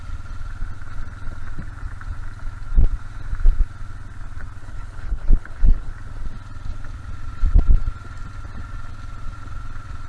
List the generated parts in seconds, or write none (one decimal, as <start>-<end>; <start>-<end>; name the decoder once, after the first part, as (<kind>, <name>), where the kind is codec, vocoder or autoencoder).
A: 4.6-5.9 (codec, HILCodec)